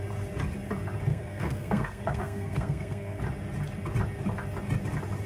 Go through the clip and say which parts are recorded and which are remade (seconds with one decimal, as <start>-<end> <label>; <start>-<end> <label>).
0.0-1.1 recorded; 1.1-3.2 remade; 3.2-5.3 recorded